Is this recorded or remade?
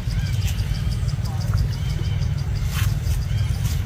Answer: recorded